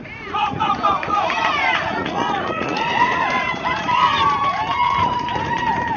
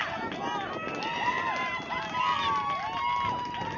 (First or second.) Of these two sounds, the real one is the second